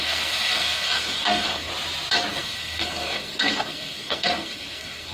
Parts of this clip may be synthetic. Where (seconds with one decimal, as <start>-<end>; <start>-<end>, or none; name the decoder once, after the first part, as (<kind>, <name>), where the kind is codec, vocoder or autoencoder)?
0.0-1.7 (codec, SNAC); 2.3-5.1